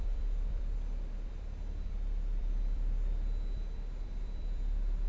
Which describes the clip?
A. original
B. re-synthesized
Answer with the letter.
B